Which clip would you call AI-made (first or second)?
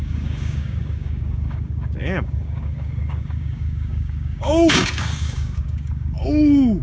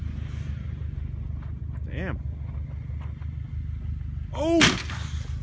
first